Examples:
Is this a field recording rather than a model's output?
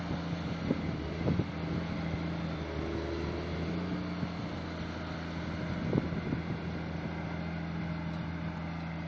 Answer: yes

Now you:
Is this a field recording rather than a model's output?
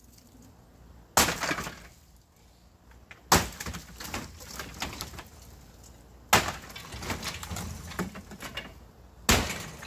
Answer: yes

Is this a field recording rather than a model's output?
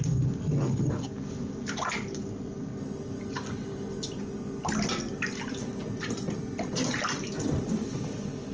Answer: yes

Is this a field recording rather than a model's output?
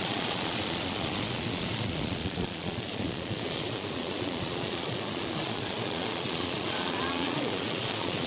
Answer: no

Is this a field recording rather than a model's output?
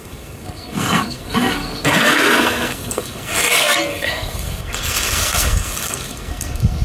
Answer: no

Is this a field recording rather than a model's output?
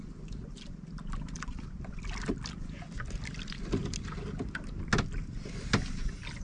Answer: yes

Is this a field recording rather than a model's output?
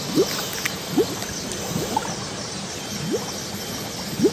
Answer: yes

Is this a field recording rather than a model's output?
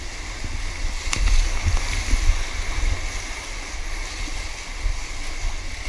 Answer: yes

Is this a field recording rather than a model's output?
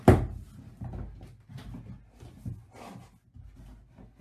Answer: yes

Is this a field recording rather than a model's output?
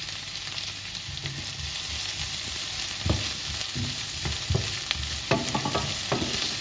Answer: yes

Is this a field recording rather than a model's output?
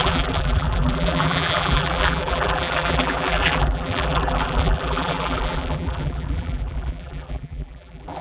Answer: no